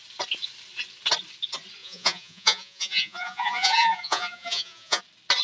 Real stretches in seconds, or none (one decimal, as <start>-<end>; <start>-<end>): 0.0-1.8; 5.0-5.4